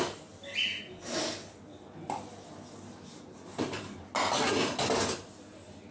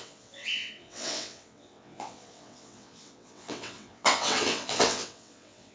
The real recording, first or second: first